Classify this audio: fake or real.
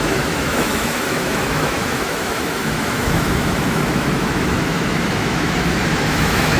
fake